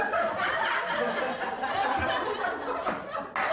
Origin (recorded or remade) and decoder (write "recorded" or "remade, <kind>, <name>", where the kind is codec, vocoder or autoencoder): recorded